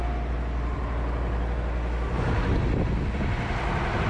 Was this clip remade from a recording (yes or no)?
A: no